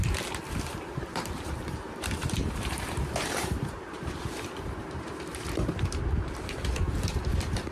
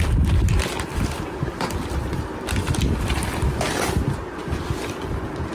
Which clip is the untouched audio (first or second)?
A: second